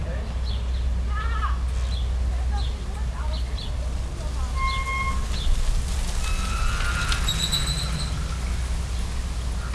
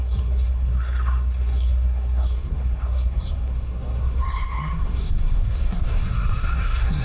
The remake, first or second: second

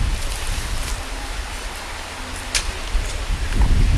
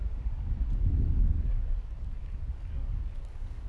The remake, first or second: second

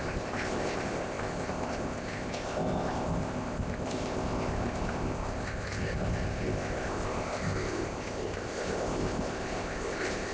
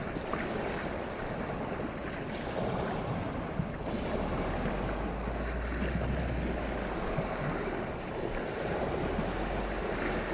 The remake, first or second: first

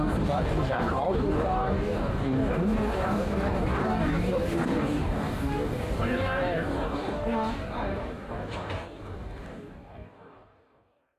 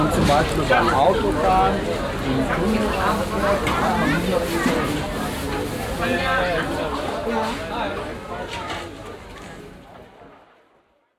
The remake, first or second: first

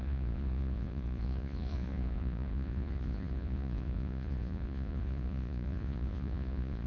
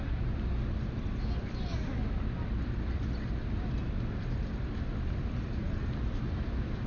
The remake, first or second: first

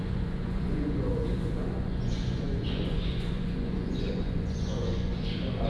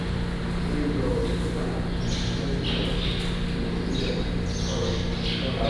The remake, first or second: first